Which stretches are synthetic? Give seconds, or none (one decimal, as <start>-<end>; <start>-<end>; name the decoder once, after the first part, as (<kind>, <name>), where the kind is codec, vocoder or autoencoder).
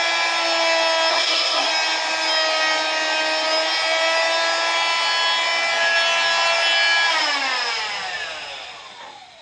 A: 1.1-1.7 (codec, SNAC)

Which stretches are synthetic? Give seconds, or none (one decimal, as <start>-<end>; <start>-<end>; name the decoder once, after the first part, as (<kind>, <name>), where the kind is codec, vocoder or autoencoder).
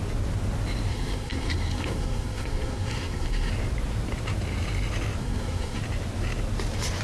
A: 0.9-3.5 (codec, SNAC); 5.2-5.8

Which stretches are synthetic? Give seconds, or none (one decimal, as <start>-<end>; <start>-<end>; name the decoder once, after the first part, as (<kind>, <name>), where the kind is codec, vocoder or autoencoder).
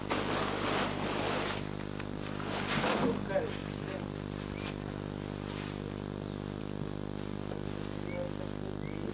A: none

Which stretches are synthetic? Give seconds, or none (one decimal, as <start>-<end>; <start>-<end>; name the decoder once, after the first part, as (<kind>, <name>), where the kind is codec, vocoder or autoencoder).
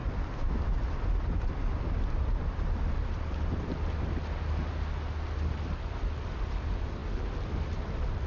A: none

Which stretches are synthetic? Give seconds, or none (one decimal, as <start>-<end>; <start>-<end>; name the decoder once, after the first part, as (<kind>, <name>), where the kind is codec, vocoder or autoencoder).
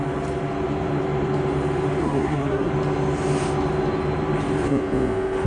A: 2.0-2.7 (codec, SNAC)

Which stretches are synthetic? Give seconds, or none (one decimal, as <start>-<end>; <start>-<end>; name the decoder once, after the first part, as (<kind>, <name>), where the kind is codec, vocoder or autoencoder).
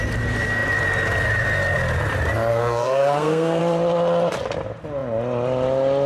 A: 2.5-3.6 (codec, SNAC)